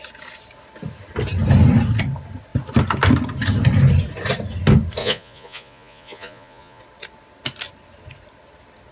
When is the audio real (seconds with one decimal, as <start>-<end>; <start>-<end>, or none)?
0.0-5.0; 6.8-8.9